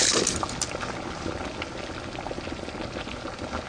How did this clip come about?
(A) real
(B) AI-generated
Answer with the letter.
A